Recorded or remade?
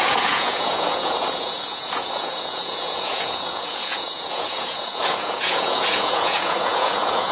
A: remade